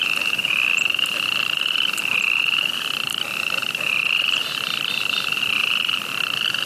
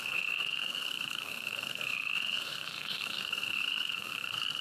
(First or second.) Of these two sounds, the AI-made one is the second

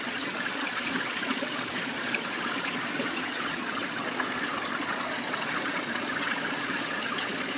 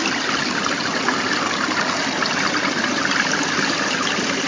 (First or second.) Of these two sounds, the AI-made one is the first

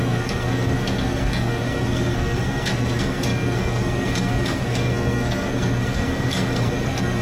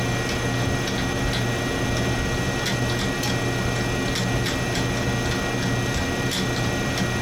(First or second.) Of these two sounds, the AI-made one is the first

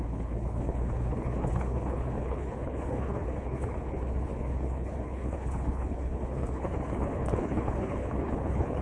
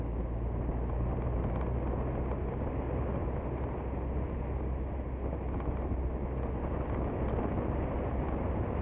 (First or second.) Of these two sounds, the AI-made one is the first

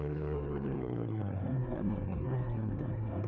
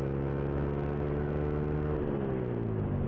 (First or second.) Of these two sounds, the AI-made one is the first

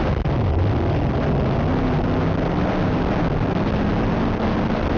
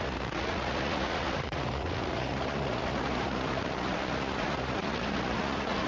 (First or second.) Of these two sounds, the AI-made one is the second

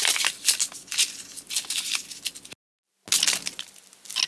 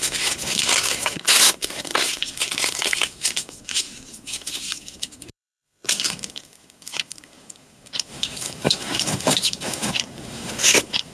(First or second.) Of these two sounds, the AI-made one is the second